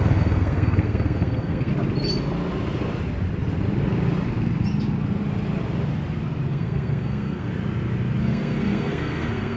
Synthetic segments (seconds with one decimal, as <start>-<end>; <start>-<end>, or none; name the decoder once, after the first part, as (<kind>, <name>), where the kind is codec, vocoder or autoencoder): 0.0-1.7 (codec, SNAC); 6.5-7.5; 8.2-9.6